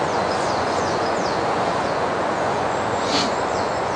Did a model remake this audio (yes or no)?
yes